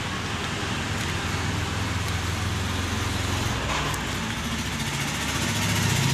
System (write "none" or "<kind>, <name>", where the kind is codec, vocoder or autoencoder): none